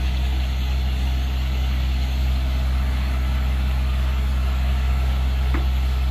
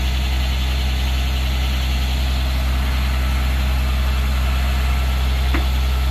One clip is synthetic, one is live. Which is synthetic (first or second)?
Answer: first